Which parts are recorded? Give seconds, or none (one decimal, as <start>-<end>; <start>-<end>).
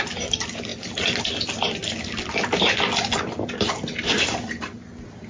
0.0-5.3